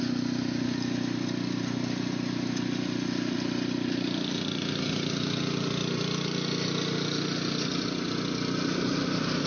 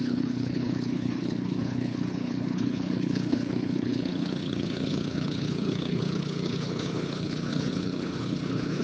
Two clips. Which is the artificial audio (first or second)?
second